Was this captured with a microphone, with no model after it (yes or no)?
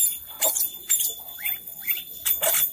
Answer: no